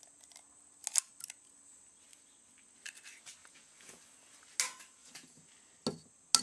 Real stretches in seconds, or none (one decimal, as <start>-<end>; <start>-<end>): 0.0-3.4; 4.0-5.0; 5.5-6.4